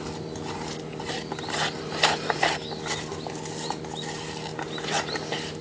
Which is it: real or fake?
real